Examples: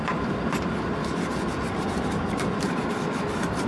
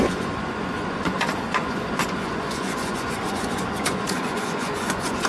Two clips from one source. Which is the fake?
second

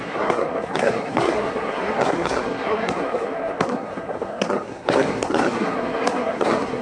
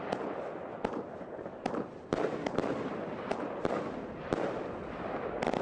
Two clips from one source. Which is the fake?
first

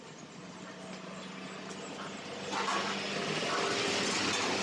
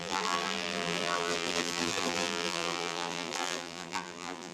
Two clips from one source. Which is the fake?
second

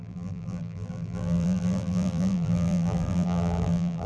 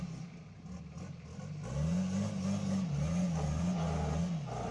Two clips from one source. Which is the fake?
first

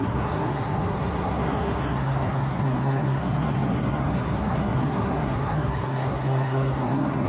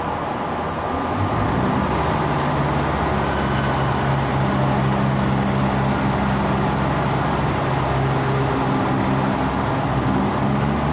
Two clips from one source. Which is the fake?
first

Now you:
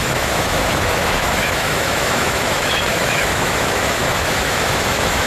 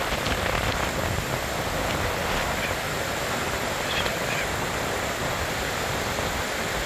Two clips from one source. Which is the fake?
first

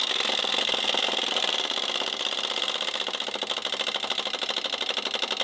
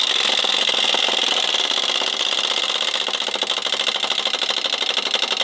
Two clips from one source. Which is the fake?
first